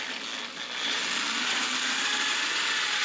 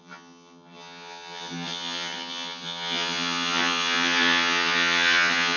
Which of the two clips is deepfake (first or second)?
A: second